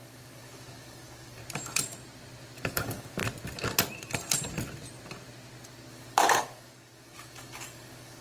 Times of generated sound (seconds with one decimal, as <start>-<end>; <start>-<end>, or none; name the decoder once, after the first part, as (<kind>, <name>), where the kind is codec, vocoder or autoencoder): 0.0-1.4 (codec, DAC); 2.7-3.2; 5.9-8.2